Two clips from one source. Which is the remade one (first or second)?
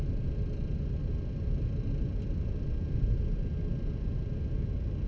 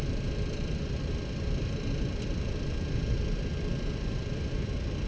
second